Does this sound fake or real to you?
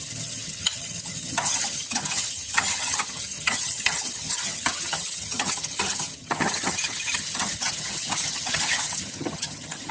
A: fake